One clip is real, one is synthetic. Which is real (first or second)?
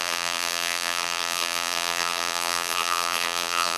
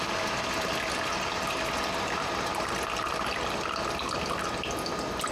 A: second